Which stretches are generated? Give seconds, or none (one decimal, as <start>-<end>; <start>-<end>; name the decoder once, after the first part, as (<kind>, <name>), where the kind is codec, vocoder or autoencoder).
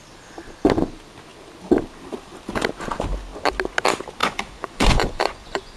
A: 4.2-5.8 (vocoder, Vocos)